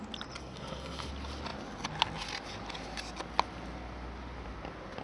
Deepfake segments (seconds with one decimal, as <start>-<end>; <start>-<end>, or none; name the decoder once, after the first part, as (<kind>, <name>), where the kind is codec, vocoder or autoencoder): 0.4-1.1 (codec, SNAC)